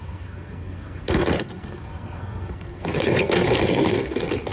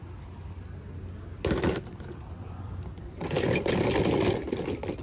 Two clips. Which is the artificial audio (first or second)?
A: first